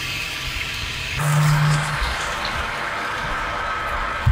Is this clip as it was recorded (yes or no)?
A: no